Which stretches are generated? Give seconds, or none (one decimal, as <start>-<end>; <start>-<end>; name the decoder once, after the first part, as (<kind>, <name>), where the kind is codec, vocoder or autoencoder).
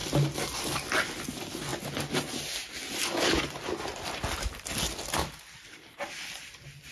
5.2-6.0 (vocoder, BigVGAN v2)